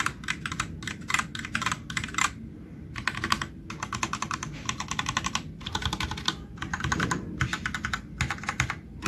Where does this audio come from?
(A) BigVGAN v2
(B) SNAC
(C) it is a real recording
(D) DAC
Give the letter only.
C